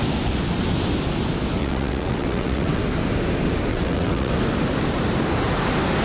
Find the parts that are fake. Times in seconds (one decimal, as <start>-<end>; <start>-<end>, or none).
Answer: 1.6-2.8; 3.7-4.3